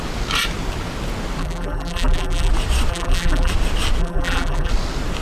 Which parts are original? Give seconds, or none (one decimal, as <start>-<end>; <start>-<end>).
0.0-1.4; 2.5-2.9; 3.5-4.0; 4.7-5.2